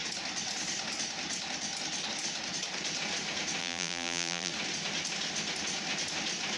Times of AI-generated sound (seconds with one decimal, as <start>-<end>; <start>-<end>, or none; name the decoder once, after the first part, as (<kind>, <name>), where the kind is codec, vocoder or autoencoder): 3.6-4.5 (vocoder, BigVGAN v2)